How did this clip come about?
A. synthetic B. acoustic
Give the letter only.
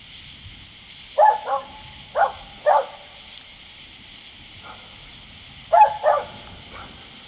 B